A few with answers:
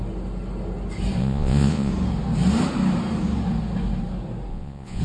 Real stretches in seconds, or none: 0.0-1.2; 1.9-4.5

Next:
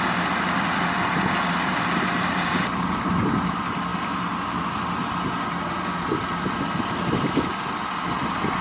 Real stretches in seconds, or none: 0.0-8.6

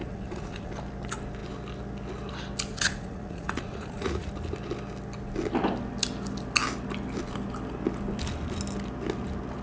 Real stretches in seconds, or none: 0.7-2.7; 4.3-9.6

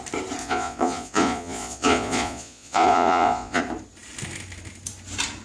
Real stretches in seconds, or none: 0.0-0.4; 3.6-5.4

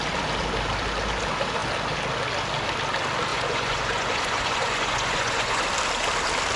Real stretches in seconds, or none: 0.0-3.3; 5.6-6.6

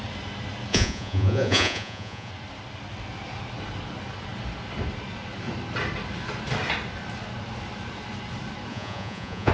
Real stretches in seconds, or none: 0.0-0.7; 2.3-8.7

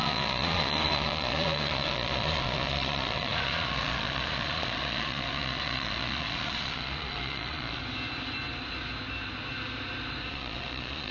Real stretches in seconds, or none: 7.8-10.3

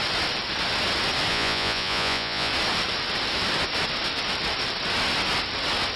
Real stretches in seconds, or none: 0.0-1.3; 2.5-6.0